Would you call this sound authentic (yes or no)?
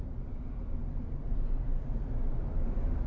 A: yes